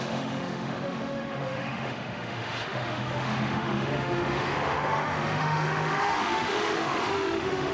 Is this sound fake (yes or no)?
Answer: yes